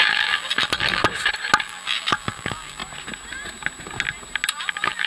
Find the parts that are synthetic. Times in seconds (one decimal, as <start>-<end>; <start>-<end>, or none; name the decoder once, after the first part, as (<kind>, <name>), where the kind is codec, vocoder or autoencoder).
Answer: 0.0-1.0 (vocoder, BigVGAN v2); 1.6-2.8; 4.6-5.1